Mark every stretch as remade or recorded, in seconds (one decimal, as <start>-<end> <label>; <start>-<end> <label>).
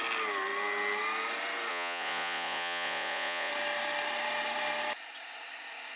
0.0-1.7 recorded; 1.7-3.5 remade; 3.5-6.0 recorded